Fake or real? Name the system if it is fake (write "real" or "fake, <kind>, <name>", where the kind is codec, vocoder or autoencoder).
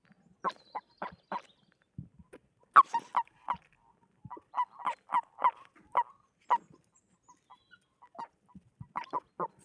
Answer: real